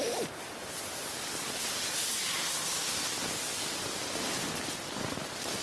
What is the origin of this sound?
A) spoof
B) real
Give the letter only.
B